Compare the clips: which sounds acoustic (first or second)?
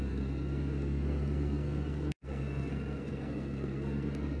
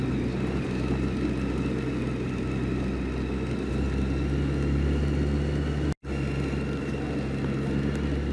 second